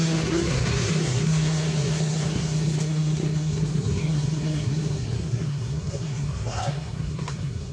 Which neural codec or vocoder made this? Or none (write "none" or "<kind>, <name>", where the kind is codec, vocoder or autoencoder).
codec, SNAC